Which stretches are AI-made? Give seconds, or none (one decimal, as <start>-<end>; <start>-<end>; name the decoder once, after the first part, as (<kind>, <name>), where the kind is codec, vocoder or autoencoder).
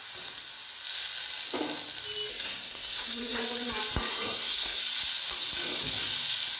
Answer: 2.3-3.4 (codec, SNAC); 4.1-4.8